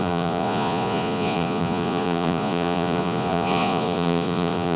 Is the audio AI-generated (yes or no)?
yes